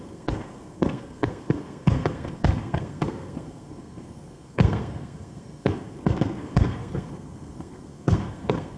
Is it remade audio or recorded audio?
remade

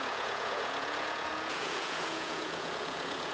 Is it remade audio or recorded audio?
remade